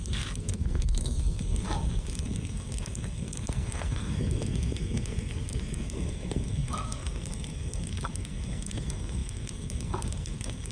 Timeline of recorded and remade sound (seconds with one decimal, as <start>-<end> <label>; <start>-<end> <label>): 0.0-10.7 remade